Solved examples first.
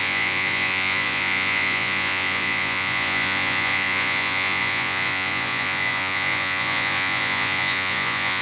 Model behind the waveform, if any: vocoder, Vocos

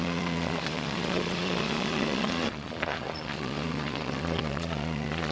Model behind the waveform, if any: vocoder, Vocos